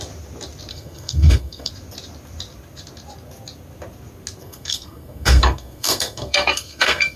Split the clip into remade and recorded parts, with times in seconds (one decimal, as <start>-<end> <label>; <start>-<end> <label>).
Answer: 0.0-0.7 recorded; 0.7-1.7 remade; 1.7-4.4 recorded; 4.4-7.2 remade